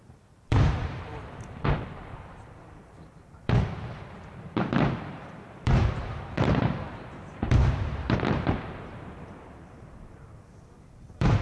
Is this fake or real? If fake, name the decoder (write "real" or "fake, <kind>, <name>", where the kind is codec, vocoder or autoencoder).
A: fake, vocoder, BigVGAN v2